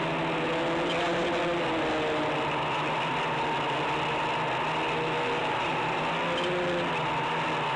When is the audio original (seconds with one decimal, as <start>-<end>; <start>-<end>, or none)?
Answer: 0.0-5.4; 6.0-7.8